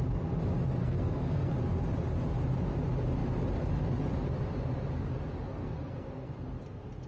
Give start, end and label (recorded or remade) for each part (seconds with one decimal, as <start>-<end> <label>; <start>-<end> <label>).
0.0-0.8 recorded; 0.8-1.5 remade; 1.5-5.6 recorded; 5.6-6.3 remade; 6.3-7.1 recorded